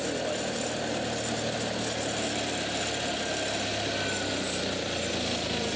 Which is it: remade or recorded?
recorded